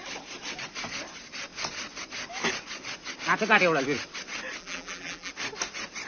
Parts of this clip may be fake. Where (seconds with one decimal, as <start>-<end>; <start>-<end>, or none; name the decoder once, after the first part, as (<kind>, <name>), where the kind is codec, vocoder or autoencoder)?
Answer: 4.6-5.3 (vocoder, BigVGAN v2)